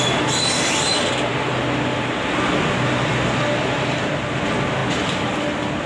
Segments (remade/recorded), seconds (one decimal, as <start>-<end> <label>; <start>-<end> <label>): 0.0-5.9 recorded